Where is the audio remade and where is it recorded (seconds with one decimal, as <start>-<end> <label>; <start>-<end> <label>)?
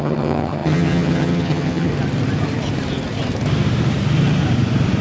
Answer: 0.0-1.9 remade; 1.9-5.0 recorded